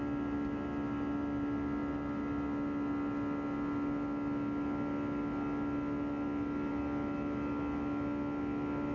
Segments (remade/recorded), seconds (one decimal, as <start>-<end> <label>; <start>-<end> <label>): 0.0-8.9 recorded